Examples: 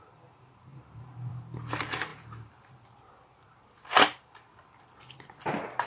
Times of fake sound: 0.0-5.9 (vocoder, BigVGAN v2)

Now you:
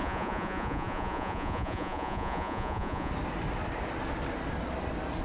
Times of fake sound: 0.0-3.1 (vocoder, Vocos)

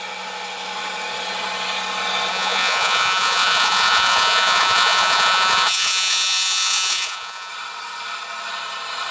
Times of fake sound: 2.3-7.5 (vocoder, Vocos)

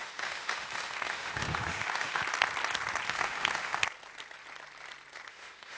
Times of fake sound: 0.0-2.2 (autoencoder, DAC-VAE); 3.1-3.8; 5.3-5.8